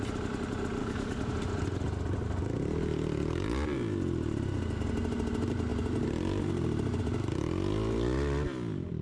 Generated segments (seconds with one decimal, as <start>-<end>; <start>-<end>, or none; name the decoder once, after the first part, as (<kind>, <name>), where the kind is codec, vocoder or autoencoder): 0.8-1.3 (codec, DAC)